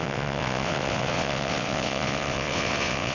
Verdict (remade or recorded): remade